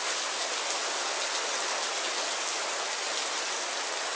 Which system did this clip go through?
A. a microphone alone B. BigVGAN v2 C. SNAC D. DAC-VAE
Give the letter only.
A